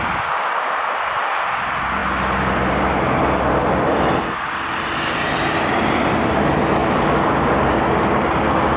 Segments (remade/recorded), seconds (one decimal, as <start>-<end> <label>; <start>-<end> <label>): 0.0-8.8 recorded

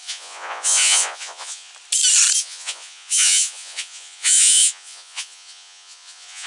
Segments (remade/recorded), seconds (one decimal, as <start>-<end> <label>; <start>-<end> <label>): 0.0-1.7 remade; 1.7-2.4 recorded; 2.4-6.5 remade

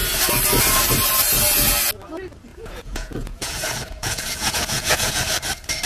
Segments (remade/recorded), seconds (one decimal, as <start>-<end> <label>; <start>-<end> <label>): 0.0-2.5 recorded; 2.5-5.2 remade; 5.2-5.9 recorded

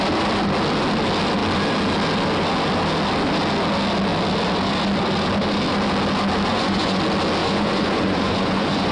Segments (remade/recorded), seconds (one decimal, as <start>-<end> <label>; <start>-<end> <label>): 0.0-6.5 recorded; 6.5-7.0 remade; 7.0-7.4 recorded; 7.4-8.9 remade

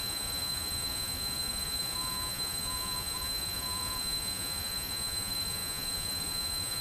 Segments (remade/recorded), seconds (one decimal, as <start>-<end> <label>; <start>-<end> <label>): 0.0-6.8 remade

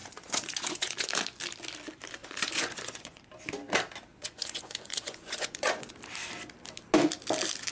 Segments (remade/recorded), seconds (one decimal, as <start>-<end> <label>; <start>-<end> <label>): 0.0-1.1 remade; 1.1-2.2 recorded; 2.2-3.2 remade; 3.2-4.1 recorded; 4.1-5.9 remade; 5.9-7.7 recorded